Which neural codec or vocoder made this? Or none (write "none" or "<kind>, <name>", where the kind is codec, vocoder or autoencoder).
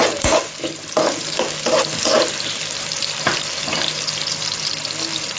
none